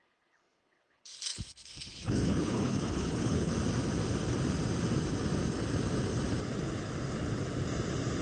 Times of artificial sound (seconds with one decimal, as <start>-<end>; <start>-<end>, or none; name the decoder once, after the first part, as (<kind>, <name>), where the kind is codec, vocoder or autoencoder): 0.0-3.5 (codec, HILCodec)